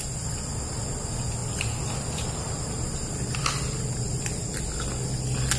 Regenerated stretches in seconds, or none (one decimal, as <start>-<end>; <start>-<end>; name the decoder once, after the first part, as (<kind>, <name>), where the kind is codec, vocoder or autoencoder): none